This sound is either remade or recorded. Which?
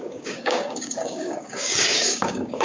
remade